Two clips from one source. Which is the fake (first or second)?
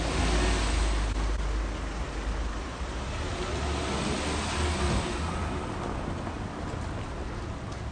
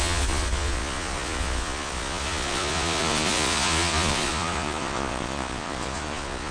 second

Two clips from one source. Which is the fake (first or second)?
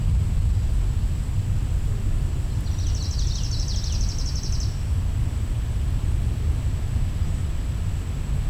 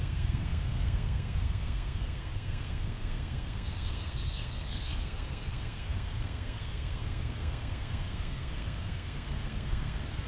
second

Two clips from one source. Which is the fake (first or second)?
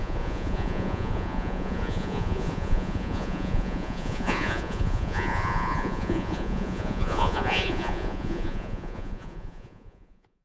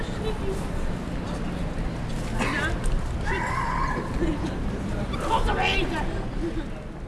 first